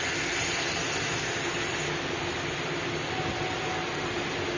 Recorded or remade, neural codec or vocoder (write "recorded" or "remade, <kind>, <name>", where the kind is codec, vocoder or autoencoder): recorded